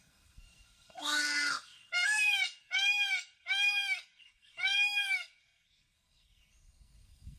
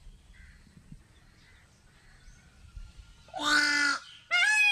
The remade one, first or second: first